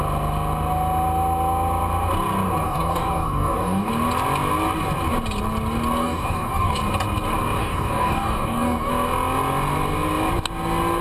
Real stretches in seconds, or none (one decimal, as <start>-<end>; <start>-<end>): 0.0-2.6; 3.9-6.0; 6.8-7.6; 8.9-11.0